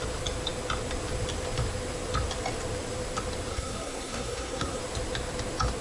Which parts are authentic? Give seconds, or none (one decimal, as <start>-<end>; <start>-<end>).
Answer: 0.0-3.5; 4.8-5.8